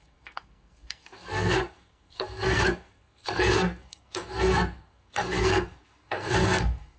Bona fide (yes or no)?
no